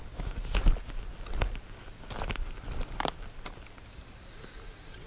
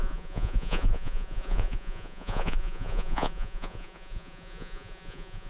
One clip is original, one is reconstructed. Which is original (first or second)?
first